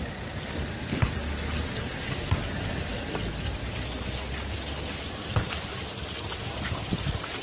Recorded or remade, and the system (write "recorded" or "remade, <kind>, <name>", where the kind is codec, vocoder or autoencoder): recorded